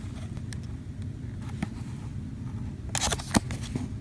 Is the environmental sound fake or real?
real